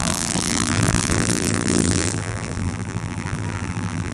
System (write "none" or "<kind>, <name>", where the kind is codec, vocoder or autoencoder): vocoder, BigVGAN v2